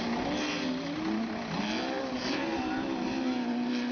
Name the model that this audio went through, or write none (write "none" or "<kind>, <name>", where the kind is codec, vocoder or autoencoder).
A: none